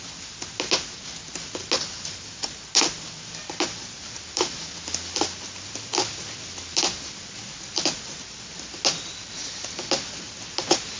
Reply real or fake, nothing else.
real